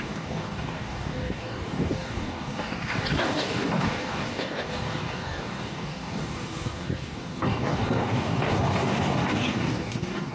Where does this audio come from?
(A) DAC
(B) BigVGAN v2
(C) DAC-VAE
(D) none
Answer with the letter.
A